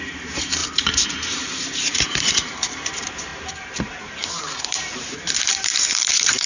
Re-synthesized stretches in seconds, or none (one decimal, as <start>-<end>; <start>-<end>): 0.0-3.3; 3.9-6.5